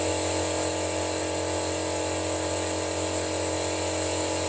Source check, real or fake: real